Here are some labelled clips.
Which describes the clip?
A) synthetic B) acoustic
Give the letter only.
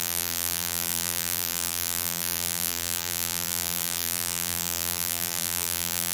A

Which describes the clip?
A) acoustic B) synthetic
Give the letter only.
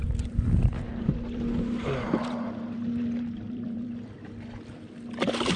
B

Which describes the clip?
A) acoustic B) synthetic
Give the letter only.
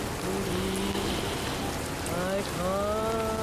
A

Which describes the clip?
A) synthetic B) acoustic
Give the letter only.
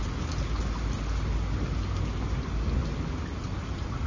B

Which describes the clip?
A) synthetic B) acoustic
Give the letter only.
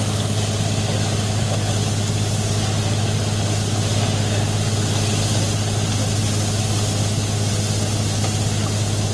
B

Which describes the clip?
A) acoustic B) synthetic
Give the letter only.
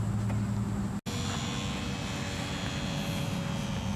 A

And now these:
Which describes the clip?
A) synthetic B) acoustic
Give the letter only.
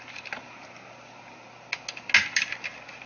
B